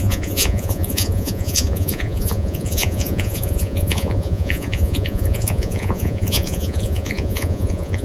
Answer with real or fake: fake